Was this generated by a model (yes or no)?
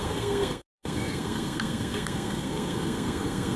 yes